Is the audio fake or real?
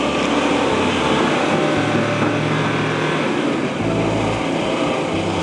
real